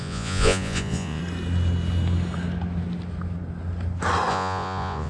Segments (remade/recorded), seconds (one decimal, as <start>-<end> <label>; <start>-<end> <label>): 0.0-1.2 remade; 1.2-4.3 recorded; 4.3-5.1 remade